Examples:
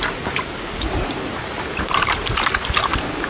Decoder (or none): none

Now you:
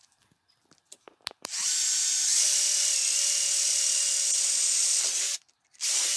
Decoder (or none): none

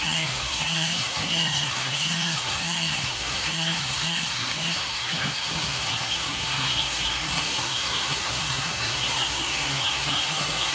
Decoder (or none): codec, SNAC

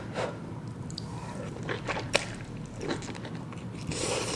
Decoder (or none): vocoder, BigVGAN v2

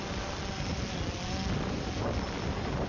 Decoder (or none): none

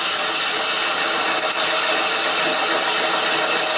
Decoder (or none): none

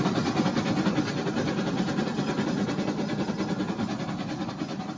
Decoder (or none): none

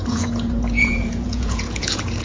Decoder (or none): vocoder, Vocos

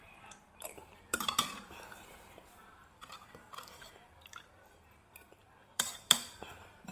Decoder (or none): vocoder, BigVGAN v2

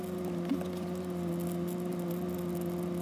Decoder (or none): none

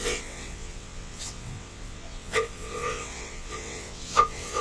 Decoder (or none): vocoder, WaveNeXt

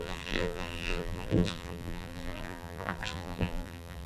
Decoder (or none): vocoder, BigVGAN v2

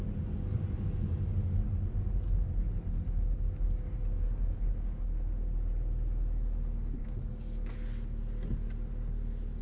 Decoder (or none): none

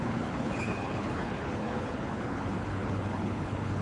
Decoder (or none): codec, HILCodec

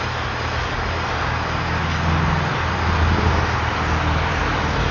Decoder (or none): none